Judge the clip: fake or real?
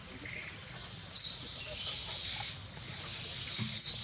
real